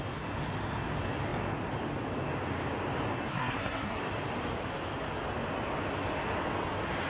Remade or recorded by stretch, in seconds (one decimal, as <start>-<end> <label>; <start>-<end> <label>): 0.0-3.3 recorded; 3.3-4.0 remade; 4.0-7.1 recorded